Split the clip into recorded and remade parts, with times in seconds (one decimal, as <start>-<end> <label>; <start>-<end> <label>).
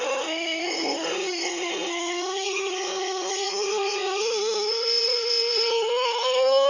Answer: 0.0-6.7 remade